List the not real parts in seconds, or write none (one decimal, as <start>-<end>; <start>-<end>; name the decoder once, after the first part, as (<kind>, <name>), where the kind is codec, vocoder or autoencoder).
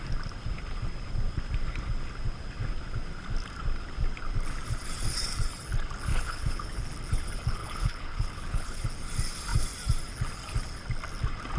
6.1-6.8 (codec, HILCodec); 7.6-8.8